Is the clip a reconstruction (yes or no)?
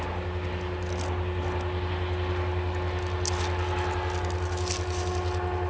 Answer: no